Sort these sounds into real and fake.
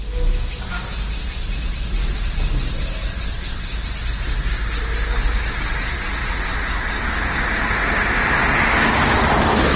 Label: real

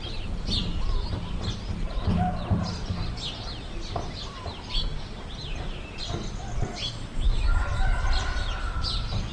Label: real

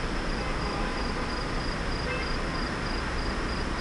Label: real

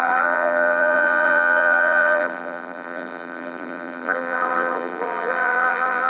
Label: fake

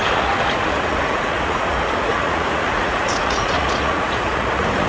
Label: fake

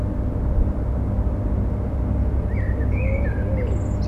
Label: real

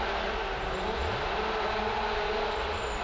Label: real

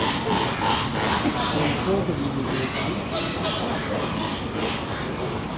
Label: real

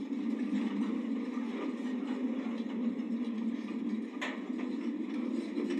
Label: real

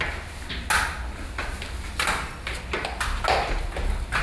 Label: real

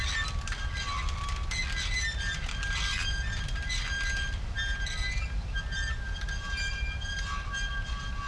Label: real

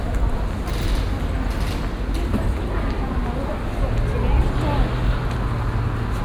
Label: real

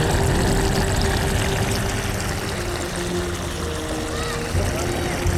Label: real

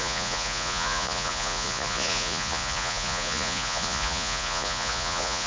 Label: fake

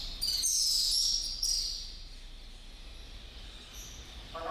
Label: real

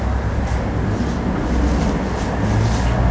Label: real